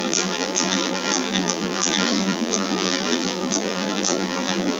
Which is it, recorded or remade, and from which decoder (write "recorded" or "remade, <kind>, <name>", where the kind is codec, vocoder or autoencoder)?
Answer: remade, vocoder, BigVGAN v2